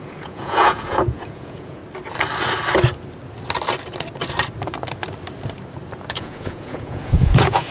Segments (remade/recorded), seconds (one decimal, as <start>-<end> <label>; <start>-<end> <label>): 0.0-1.8 remade; 1.8-6.1 recorded; 6.1-7.7 remade